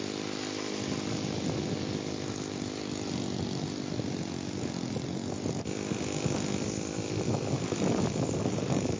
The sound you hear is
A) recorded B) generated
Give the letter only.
A